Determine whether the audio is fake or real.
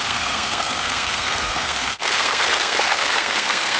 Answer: fake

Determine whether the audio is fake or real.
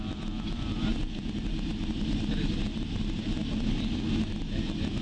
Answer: real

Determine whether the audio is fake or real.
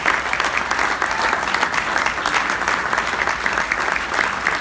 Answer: real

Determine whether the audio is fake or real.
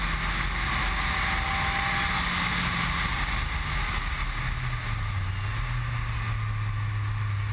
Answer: real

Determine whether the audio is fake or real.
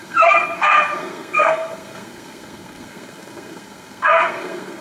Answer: fake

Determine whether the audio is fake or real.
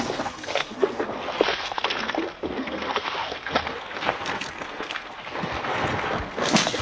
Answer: fake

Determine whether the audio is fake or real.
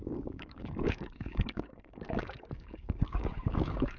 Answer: fake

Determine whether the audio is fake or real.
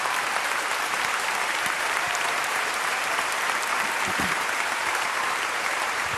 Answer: fake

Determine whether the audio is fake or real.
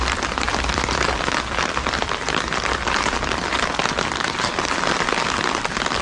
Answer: fake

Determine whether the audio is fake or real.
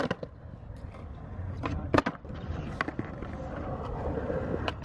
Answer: real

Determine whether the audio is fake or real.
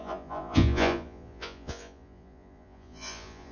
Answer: fake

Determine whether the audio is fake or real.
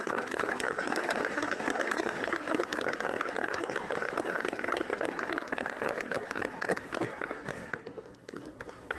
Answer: fake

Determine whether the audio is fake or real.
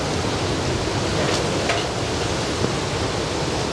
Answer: real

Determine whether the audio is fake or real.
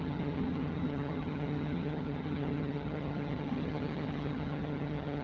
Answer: fake